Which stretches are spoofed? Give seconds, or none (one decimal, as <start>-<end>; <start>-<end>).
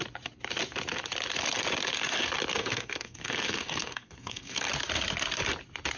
2.6-4.7